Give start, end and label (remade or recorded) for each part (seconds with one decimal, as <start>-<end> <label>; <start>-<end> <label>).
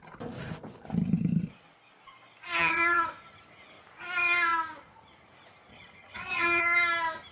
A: 0.0-2.6 recorded; 2.6-3.1 remade; 3.1-5.7 recorded; 5.7-6.6 remade; 6.6-7.3 recorded